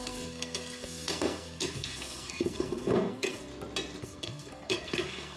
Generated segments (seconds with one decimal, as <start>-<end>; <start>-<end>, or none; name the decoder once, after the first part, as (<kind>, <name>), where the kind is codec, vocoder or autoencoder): 0.0-3.5 (codec, SNAC); 4.0-5.4